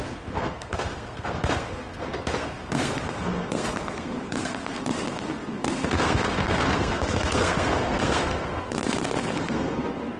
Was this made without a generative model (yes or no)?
no